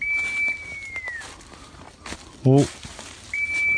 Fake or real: real